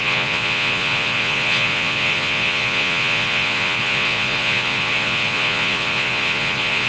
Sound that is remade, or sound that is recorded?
remade